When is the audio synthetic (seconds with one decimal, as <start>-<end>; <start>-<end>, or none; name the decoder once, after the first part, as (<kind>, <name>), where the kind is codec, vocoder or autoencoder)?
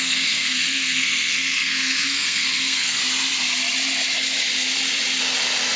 0.0-3.0 (codec, SNAC)